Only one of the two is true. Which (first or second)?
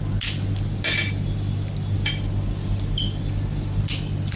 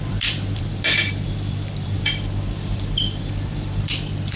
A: first